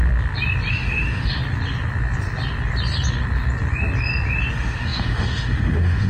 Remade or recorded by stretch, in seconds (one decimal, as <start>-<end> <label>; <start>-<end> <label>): 0.0-0.7 recorded; 0.7-1.4 remade; 1.4-4.5 recorded; 4.5-6.1 remade